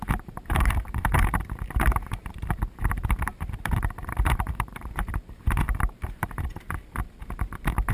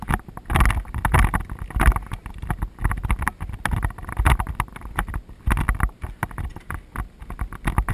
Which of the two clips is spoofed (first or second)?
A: first